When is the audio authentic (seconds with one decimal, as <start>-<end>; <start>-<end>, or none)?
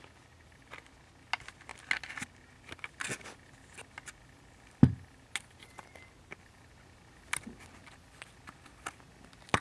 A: 0.0-9.6